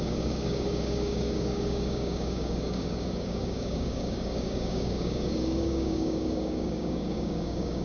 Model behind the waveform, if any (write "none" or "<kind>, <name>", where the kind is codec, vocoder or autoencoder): codec, DAC